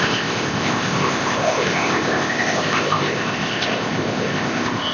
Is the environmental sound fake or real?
fake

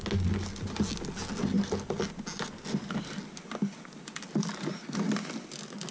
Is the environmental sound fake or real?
real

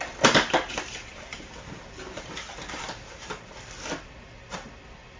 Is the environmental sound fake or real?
fake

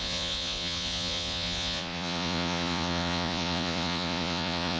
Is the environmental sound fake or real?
fake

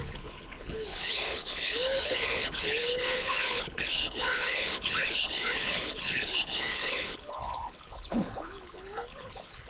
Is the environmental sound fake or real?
fake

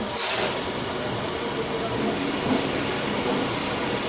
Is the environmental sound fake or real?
real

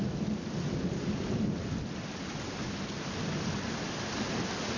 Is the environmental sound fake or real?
real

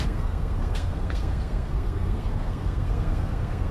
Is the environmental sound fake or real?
fake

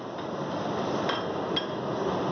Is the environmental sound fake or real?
real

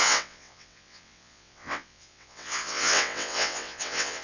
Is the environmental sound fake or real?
fake